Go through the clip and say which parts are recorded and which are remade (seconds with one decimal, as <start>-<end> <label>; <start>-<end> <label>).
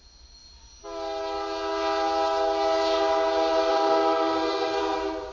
0.0-3.7 recorded; 3.7-4.8 remade; 4.8-5.3 recorded